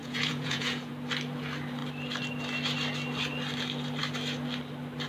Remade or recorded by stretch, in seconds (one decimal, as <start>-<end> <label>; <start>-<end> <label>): 0.0-0.9 remade; 0.9-5.1 recorded